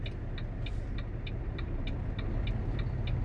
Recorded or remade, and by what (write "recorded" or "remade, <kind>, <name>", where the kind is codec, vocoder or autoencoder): recorded